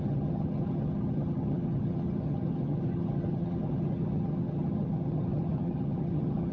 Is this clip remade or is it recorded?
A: remade